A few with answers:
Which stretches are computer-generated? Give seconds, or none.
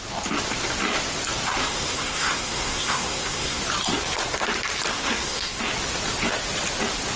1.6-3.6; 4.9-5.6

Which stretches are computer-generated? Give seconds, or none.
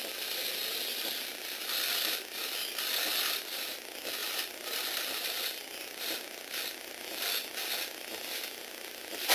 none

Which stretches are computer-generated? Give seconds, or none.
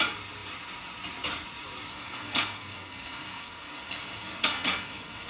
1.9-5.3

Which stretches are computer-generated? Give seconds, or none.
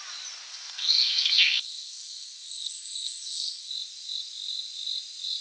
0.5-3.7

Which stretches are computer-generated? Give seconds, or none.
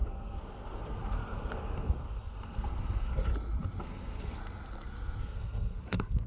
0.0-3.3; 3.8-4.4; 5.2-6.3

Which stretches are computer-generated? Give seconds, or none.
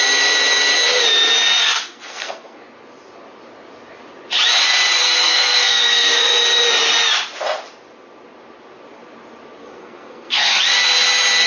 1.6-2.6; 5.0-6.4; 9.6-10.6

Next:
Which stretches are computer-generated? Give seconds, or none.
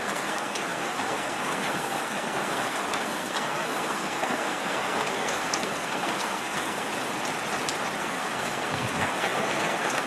0.0-6.9; 8.0-10.1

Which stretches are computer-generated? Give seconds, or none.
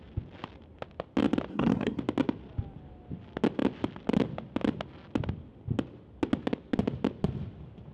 1.5-2.0